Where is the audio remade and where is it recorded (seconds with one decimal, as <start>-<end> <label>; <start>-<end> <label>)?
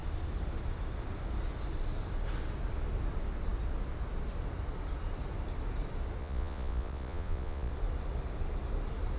0.0-6.2 recorded; 6.2-7.7 remade; 7.7-9.2 recorded